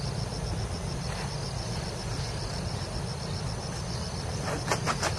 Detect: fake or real real